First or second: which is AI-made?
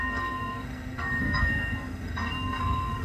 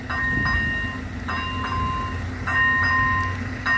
first